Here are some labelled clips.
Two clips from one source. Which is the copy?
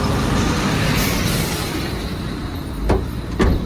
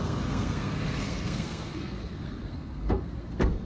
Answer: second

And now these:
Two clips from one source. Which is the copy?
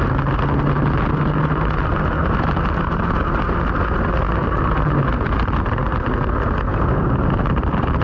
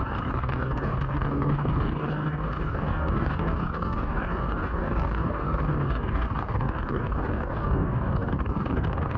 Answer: second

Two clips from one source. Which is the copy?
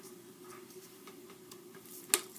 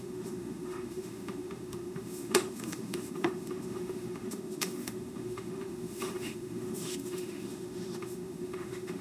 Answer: second